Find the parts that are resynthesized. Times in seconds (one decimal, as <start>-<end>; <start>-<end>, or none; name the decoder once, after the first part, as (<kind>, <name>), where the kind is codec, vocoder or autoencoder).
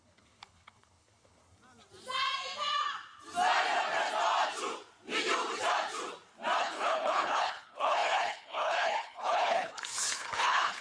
0.0-1.4 (codec, HILCodec); 6.6-10.8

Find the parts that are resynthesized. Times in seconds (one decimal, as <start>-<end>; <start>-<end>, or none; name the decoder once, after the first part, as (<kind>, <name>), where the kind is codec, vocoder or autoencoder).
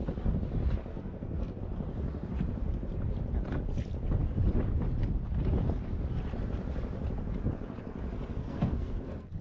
0.9-1.6 (codec, SNAC); 8.3-9.4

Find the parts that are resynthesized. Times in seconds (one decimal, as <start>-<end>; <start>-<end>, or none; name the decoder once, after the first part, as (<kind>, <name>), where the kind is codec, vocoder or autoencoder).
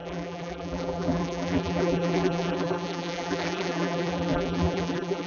0.0-5.3 (vocoder, BigVGAN v2)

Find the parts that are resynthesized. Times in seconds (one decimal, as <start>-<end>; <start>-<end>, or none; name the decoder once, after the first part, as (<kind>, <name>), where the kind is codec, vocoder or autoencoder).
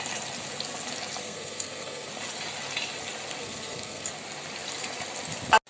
1.2-2.1 (codec, SNAC); 3.4-4.1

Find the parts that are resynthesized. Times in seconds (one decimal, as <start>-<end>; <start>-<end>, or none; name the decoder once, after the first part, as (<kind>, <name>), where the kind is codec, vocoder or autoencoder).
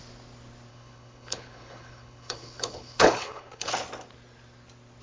0.7-3.7 (codec, HILCodec)